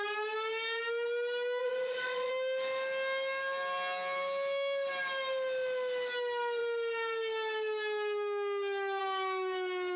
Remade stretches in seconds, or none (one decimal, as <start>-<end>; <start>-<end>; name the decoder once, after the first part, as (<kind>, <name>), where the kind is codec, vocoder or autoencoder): 1.6-2.3 (vocoder, Vocos)